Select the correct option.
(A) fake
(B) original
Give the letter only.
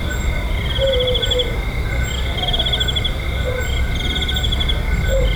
B